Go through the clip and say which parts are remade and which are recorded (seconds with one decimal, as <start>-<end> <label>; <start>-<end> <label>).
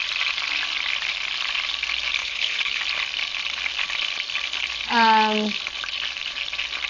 0.0-2.2 recorded; 2.2-2.8 remade; 2.8-6.9 recorded